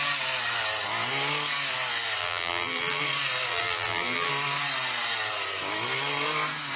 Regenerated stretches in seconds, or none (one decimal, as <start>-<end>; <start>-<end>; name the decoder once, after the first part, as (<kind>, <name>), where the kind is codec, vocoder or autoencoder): 2.2-3.0 (vocoder, BigVGAN v2); 3.5-4.3